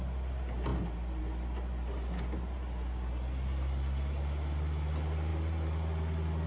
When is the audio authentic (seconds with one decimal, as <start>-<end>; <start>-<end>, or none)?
0.0-6.5